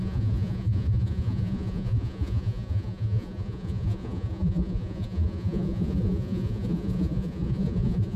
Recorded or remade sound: remade